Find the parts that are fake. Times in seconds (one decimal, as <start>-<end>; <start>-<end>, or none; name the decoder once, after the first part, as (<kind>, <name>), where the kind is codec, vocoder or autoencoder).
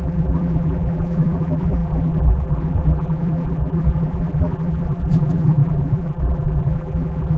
0.0-7.4 (vocoder, BigVGAN v2)